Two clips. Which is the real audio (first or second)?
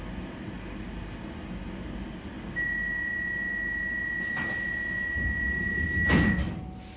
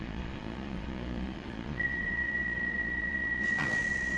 first